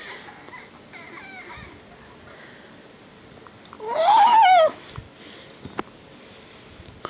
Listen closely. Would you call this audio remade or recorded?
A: recorded